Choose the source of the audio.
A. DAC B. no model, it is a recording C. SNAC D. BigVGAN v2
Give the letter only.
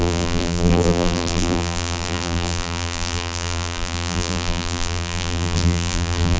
D